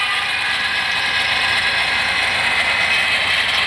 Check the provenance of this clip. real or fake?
real